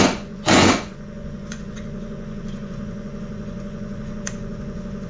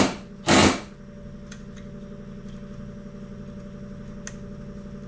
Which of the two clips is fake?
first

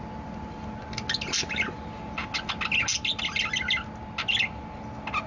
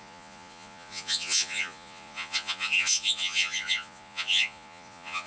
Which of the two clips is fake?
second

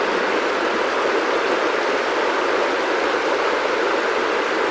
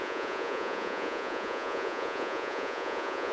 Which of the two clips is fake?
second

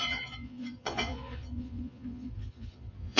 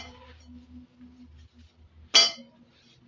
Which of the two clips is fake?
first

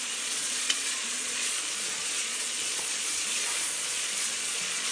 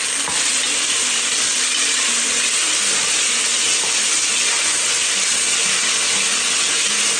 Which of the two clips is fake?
first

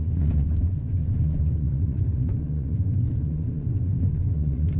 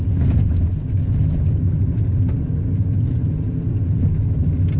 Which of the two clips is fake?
first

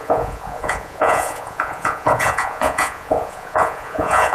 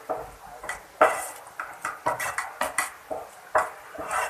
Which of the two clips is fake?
first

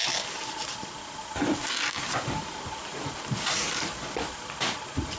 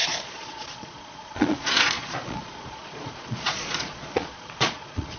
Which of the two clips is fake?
second